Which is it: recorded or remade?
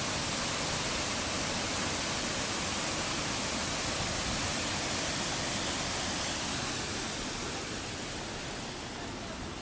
recorded